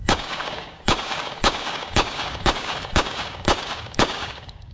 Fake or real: fake